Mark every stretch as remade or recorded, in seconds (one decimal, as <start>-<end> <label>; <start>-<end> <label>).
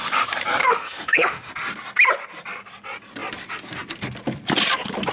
0.0-0.6 recorded; 0.6-1.5 remade; 1.5-5.1 recorded